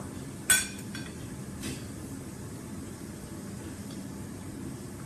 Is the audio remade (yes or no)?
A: no